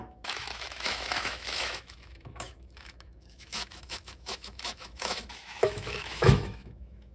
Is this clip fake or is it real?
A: fake